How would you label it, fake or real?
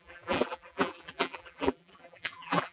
fake